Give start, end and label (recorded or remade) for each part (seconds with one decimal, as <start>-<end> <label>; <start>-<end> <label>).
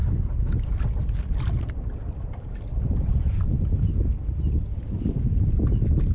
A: 0.0-6.1 recorded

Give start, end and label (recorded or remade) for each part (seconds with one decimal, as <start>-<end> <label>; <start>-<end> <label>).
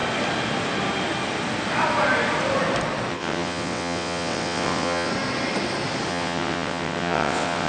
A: 0.0-3.1 recorded; 3.1-5.1 remade; 5.1-6.1 recorded; 6.1-7.7 remade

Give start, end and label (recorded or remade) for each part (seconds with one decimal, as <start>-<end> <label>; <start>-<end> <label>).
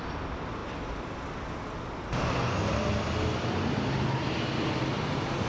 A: 0.0-5.5 recorded